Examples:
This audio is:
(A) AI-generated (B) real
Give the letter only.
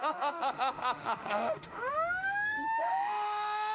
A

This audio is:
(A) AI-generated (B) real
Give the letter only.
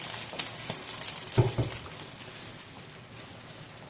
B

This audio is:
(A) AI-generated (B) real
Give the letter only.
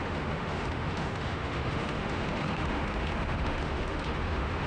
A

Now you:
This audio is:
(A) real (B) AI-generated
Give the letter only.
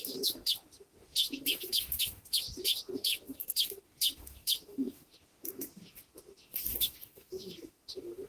B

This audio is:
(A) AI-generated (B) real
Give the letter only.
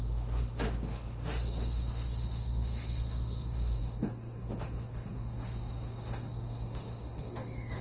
A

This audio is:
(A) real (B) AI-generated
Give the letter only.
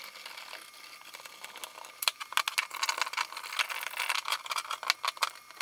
A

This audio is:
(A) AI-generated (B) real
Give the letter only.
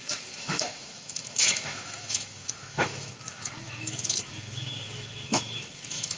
A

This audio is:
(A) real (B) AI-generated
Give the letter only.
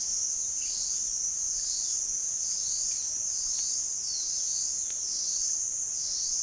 A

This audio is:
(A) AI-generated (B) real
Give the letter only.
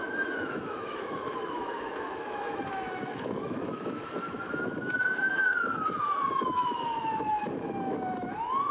A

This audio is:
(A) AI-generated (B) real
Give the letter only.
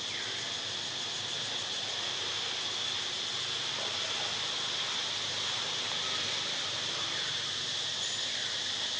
B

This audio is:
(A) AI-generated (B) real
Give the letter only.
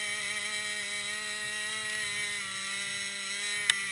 B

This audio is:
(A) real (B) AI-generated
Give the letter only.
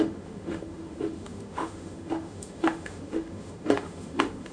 B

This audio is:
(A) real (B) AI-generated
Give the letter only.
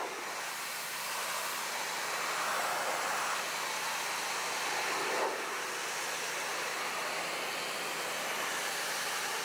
A